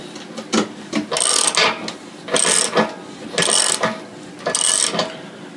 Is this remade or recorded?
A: recorded